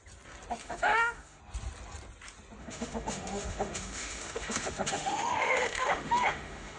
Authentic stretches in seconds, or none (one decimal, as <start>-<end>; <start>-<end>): 0.0-0.6; 1.4-2.6